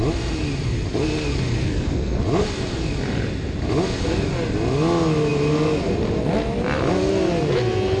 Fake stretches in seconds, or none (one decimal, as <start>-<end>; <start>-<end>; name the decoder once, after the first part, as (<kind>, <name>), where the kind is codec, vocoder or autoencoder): 1.6-2.2 (codec, SNAC)

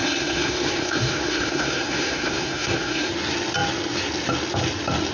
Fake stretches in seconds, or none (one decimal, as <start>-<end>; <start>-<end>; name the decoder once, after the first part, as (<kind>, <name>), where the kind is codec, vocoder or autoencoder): 0.0-3.1 (codec, SNAC)

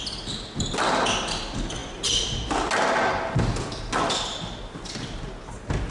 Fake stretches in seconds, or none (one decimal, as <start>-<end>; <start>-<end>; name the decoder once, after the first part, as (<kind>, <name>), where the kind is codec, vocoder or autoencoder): none

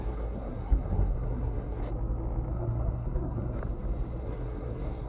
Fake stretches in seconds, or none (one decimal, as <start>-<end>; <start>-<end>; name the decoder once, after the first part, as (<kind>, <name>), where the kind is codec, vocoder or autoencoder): 0.0-1.8 (codec, SNAC); 2.5-3.6; 4.2-5.1

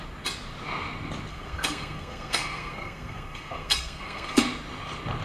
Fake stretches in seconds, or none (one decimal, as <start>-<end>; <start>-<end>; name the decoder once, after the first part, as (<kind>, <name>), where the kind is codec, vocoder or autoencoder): 1.3-4.4 (codec, SNAC)

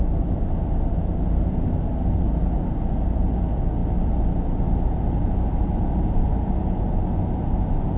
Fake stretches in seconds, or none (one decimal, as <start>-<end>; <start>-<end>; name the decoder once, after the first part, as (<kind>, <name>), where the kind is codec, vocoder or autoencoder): none

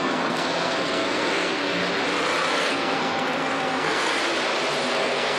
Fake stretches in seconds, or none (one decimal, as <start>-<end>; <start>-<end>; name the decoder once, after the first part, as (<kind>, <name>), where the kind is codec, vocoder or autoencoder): 0.0-1.8 (codec, SNAC); 2.5-4.2; 4.9-5.4